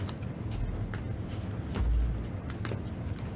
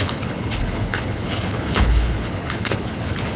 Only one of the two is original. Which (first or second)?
first